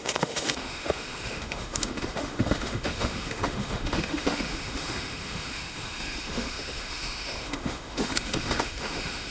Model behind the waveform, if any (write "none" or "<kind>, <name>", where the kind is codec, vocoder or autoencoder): autoencoder, DAC-VAE